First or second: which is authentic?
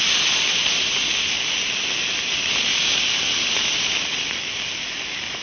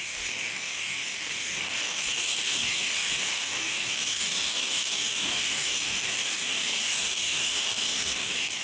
first